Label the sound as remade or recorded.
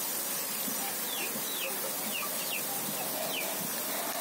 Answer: recorded